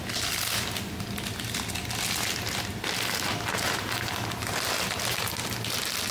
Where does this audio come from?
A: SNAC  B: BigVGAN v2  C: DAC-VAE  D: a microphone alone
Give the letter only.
D